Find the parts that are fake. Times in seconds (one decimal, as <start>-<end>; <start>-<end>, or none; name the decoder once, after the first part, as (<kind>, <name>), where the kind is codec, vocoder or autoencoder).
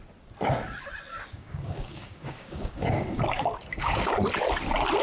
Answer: 1.1-4.1 (codec, DAC)